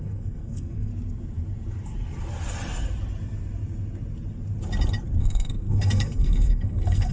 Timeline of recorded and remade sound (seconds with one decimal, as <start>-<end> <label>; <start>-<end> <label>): 0.0-0.9 remade; 0.9-5.2 recorded; 5.2-7.1 remade